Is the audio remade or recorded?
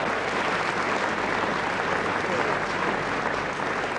recorded